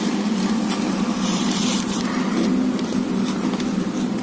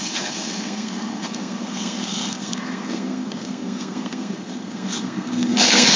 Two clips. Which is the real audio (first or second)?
first